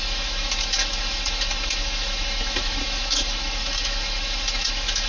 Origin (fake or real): fake